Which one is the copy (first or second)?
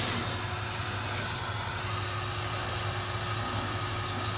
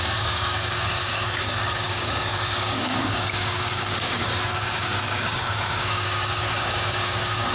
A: second